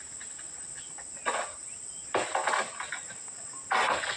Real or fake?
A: real